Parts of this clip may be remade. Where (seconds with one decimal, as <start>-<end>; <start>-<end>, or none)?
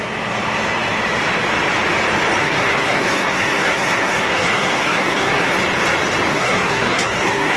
2.4-5.5; 6.3-7.6